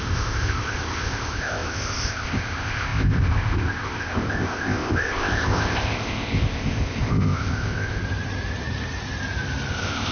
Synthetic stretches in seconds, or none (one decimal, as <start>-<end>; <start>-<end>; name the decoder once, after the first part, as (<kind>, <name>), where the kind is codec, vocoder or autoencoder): 0.0-8.0 (codec, ZipCodec); 9.7-10.1